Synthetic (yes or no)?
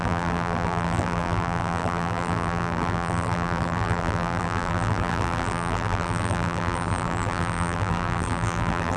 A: yes